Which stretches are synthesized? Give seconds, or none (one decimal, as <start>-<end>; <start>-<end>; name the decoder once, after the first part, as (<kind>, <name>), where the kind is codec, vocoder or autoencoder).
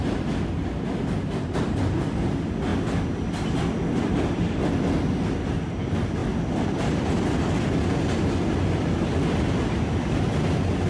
none